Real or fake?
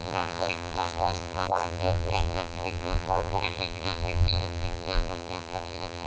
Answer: fake